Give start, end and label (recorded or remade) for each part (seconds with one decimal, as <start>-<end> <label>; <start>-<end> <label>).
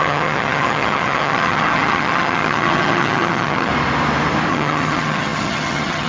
0.0-3.7 remade; 3.7-4.5 recorded; 4.5-6.1 remade